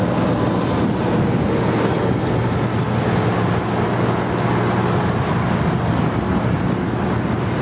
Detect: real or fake real